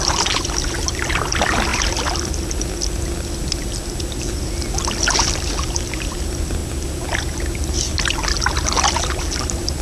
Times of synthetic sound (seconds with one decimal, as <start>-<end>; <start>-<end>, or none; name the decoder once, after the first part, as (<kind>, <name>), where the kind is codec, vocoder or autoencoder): 1.7-2.9 (vocoder, BigVGAN v2)